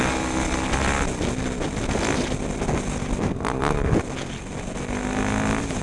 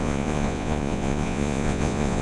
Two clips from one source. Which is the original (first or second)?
first